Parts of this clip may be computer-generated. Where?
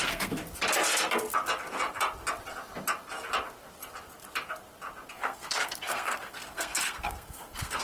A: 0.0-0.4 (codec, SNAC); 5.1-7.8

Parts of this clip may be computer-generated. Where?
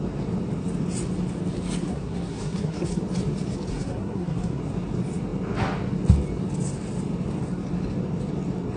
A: 1.8-3.0 (codec, SNAC); 3.7-4.6